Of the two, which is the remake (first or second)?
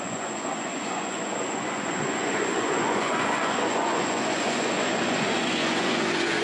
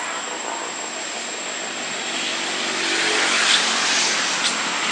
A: first